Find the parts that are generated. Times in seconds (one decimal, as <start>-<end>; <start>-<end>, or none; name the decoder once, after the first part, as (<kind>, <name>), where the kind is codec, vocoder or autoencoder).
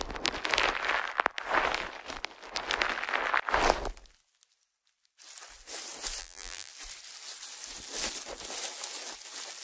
6.2-6.7 (vocoder, BigVGAN v2)